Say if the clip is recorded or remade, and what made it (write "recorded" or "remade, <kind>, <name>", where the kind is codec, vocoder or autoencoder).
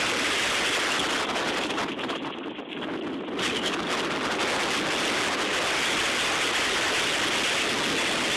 recorded